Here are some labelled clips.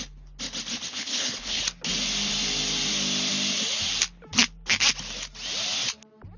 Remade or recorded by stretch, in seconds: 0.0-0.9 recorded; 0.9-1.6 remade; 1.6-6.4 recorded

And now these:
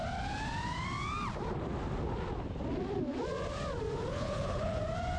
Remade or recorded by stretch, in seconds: 0.0-4.1 recorded; 4.1-4.8 remade; 4.8-5.2 recorded

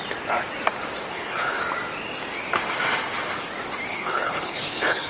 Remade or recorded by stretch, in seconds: 0.0-1.1 recorded; 1.1-1.6 remade; 1.6-3.9 recorded; 3.9-5.1 remade

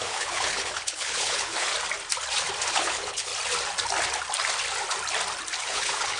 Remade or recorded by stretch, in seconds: 0.0-1.7 remade; 1.7-2.7 recorded; 2.7-3.3 remade; 3.3-5.6 recorded; 5.6-6.2 remade

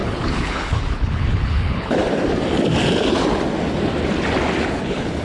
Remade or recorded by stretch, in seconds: 0.0-2.0 remade; 2.0-4.7 recorded; 4.7-5.2 remade